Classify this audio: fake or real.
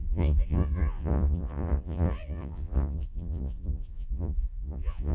fake